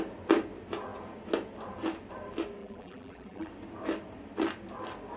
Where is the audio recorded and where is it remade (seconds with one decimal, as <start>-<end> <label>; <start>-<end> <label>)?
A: 0.0-2.6 recorded; 2.6-3.5 remade; 3.5-5.2 recorded